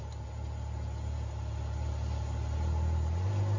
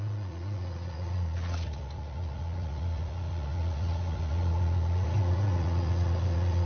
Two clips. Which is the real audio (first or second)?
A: first